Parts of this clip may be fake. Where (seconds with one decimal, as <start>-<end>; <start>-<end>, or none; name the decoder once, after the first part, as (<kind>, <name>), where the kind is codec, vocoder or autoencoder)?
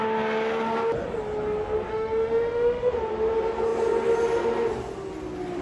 1.9-2.9 (autoencoder, DAC-VAE)